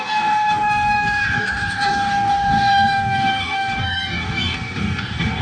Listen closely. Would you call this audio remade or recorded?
remade